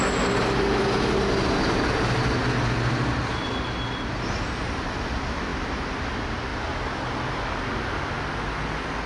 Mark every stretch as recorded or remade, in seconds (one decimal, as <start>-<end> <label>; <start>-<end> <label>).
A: 0.0-9.1 recorded